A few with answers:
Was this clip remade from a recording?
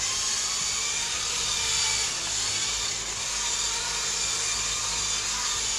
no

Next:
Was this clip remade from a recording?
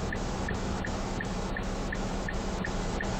yes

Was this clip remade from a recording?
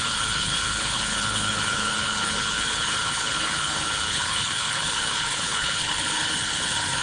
yes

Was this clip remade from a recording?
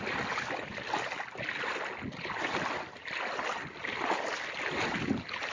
no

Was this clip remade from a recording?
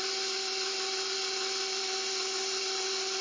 no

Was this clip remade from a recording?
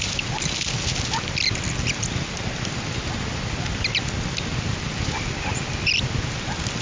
no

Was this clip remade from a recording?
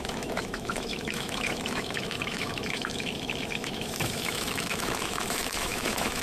yes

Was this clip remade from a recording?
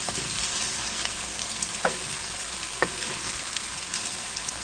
yes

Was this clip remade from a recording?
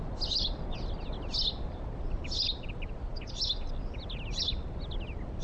no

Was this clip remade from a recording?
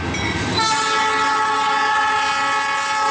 no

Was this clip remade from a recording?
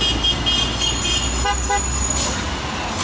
no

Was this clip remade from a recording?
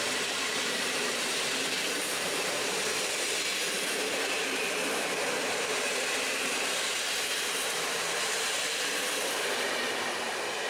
yes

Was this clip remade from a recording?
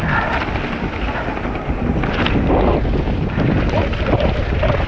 no